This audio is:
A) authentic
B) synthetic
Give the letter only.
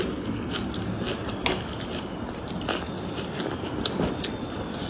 A